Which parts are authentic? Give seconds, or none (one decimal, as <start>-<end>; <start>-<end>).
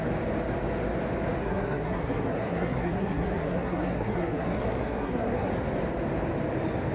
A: 0.0-1.4; 5.5-6.9